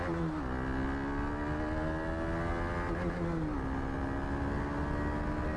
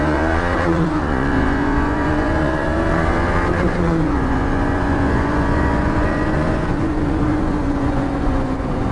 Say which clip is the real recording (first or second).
first